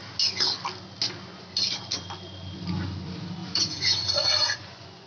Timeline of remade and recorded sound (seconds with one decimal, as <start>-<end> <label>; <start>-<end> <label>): 0.0-3.4 recorded; 3.4-5.1 remade

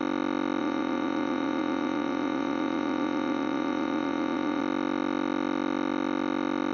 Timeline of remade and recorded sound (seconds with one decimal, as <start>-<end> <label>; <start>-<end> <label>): 0.0-0.6 recorded; 0.6-4.6 remade; 4.6-6.7 recorded

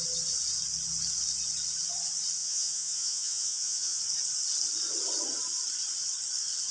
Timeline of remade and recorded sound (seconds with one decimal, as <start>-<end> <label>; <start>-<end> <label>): 0.0-2.4 recorded; 2.4-4.0 remade; 4.0-6.7 recorded

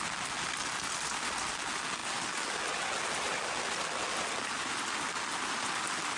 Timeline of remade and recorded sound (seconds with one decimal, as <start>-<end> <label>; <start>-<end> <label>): 0.0-6.2 recorded

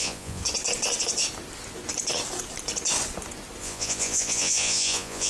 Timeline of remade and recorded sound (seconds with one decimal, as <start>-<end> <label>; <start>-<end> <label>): 0.0-0.4 remade; 0.4-3.6 recorded; 3.6-5.3 remade

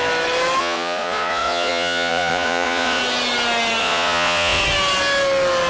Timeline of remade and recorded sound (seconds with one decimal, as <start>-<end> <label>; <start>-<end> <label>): 0.0-0.6 recorded; 0.6-3.0 remade; 3.0-3.8 recorded; 3.8-4.6 remade; 4.6-5.7 recorded

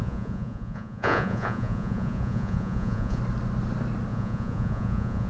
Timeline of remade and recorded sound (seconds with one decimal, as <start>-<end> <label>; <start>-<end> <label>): 0.0-3.2 remade; 3.2-4.1 recorded; 4.1-5.3 remade

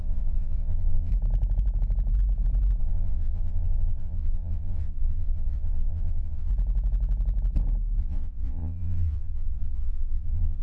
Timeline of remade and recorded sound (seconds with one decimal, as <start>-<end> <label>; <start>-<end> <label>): 0.0-1.1 remade; 1.1-2.8 recorded; 2.8-6.5 remade; 6.5-8.0 recorded; 8.0-10.6 remade